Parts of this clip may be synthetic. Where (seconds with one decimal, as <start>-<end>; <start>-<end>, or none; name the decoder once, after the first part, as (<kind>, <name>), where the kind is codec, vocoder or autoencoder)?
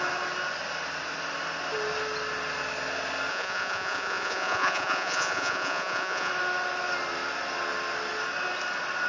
3.3-6.3 (vocoder, Vocos)